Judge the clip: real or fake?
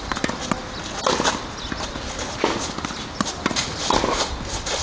real